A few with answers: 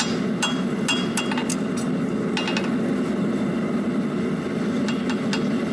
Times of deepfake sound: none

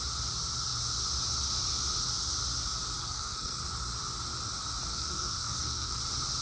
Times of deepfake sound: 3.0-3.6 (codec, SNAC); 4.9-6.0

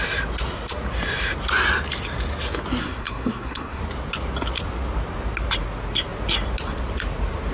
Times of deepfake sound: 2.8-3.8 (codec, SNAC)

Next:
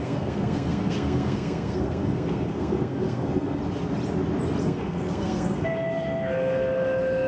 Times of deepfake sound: 0.0-3.6 (codec, SNAC); 4.6-7.3

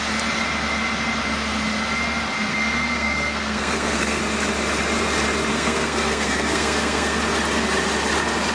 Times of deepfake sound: 2.5-4.2 (codec, SNAC); 5.5-7.2

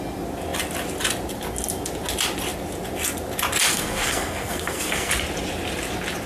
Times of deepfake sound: 3.7-5.1 (codec, SNAC)